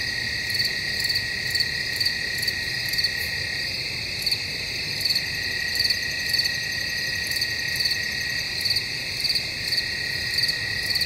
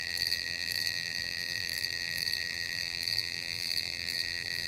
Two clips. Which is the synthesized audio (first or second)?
second